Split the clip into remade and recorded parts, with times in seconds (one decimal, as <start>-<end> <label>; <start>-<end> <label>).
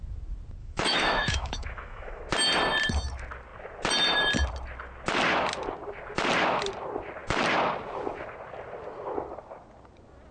0.0-0.6 recorded; 0.6-2.2 remade; 2.2-10.3 recorded